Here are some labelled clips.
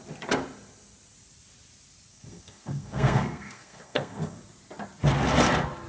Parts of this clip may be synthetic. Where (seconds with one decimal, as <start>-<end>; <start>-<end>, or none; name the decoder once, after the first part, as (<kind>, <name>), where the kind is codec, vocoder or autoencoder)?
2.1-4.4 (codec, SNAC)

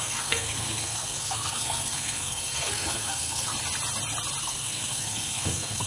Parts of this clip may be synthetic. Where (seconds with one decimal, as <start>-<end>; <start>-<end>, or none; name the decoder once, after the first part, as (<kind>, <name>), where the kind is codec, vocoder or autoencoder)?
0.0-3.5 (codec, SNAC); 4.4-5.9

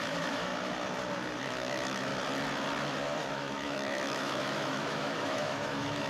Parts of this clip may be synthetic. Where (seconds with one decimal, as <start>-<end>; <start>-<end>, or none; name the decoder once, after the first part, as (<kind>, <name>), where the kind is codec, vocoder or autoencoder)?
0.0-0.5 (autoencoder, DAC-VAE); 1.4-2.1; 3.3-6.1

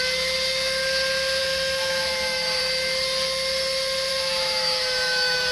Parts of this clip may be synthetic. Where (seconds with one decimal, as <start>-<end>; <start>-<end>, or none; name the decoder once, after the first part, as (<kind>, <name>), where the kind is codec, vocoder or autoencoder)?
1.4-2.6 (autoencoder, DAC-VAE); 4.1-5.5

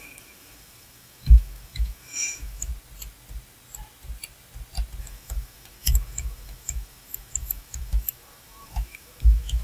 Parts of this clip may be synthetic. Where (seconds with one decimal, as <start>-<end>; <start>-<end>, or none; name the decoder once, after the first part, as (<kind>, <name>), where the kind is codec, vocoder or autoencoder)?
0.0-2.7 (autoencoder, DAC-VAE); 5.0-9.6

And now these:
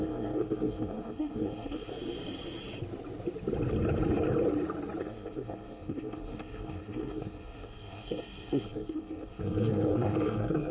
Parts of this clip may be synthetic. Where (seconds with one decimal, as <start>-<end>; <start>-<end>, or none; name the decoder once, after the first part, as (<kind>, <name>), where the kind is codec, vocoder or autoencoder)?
0.0-1.9 (codec, SNAC); 5.0-10.7